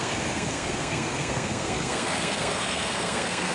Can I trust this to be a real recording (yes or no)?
no